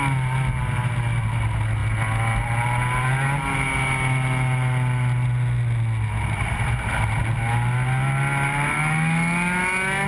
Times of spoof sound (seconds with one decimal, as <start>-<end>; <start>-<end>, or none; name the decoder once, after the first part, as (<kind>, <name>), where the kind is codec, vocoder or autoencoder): none